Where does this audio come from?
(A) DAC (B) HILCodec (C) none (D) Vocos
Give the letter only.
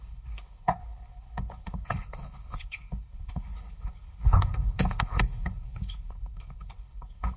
B